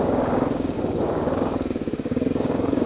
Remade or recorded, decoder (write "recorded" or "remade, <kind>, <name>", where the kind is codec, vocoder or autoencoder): remade, codec, DAC